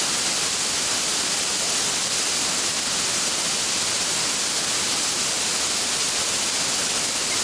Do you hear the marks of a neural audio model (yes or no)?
no